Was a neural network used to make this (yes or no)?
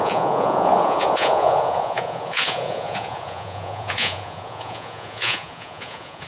yes